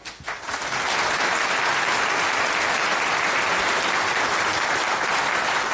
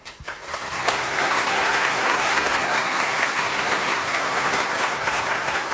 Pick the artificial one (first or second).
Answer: second